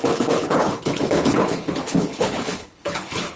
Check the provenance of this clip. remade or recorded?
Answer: remade